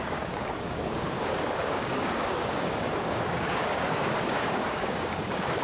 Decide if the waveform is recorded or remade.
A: remade